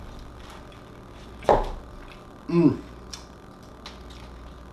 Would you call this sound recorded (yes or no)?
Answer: yes